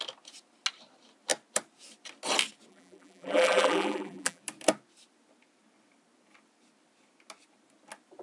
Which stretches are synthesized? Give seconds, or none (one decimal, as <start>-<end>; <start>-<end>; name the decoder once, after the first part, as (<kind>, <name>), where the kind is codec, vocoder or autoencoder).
2.7-4.4 (vocoder, BigVGAN v2)

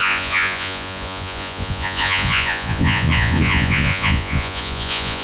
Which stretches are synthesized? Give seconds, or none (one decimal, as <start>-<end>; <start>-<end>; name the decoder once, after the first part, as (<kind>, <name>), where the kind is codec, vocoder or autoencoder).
0.0-5.2 (vocoder, Vocos)

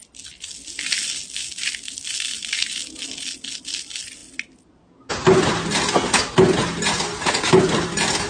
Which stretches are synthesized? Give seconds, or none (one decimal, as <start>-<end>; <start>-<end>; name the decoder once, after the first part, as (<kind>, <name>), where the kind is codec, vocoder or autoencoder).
none

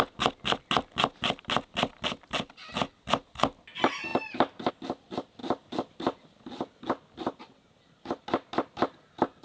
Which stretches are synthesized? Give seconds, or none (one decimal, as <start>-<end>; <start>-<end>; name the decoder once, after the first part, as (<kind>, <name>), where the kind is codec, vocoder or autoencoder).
none